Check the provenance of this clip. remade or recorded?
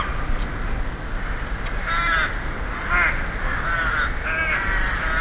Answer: recorded